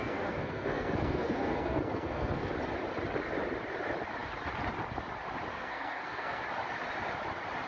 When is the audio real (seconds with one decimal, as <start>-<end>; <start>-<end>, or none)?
2.5-5.5; 6.4-7.7